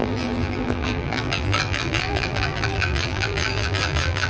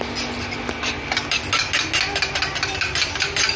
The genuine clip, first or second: second